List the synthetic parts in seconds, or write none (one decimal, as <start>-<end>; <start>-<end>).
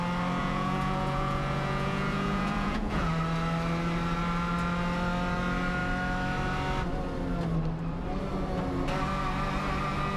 0.4-3.1